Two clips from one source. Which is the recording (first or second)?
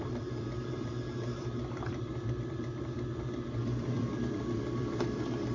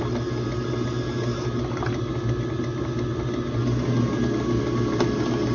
second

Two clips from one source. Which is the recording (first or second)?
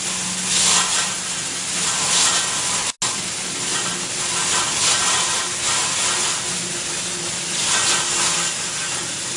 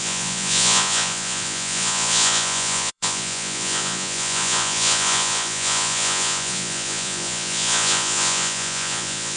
first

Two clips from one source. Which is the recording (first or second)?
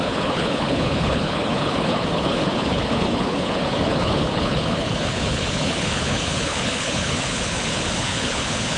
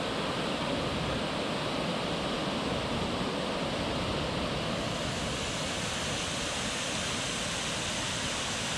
second